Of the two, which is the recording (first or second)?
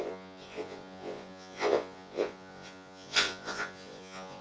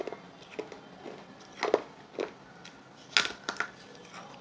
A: second